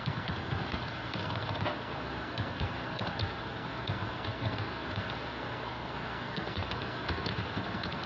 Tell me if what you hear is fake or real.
fake